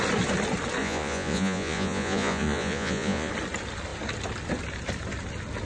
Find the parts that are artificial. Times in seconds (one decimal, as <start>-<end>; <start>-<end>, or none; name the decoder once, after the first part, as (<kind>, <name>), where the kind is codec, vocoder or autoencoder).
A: 0.8-3.3 (vocoder, Vocos)